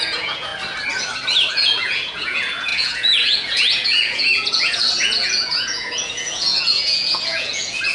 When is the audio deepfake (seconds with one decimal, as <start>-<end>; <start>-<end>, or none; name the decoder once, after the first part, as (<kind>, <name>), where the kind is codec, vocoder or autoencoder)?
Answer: 0.0-0.5 (vocoder, Vocos); 1.5-7.9